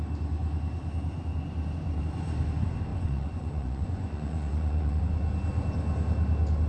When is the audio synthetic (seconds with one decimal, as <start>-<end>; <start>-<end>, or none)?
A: 2.9-5.0